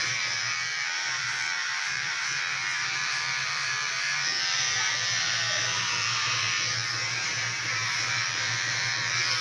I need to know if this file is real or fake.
fake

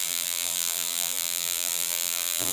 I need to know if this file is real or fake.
fake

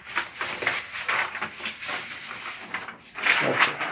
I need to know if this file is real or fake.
fake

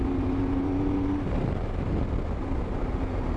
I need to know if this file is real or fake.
fake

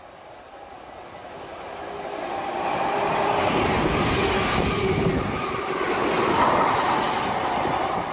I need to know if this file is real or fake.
real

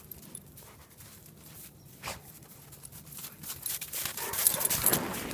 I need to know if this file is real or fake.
fake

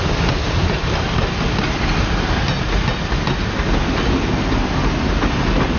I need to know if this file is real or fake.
real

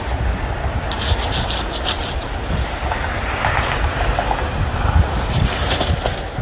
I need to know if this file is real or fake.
real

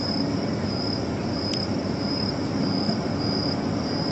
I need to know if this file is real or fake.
fake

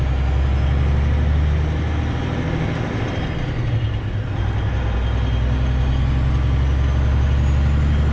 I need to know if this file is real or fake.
real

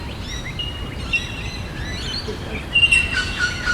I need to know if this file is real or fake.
real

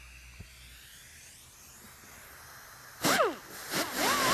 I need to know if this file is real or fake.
real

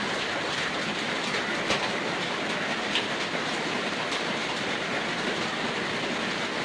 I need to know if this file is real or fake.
real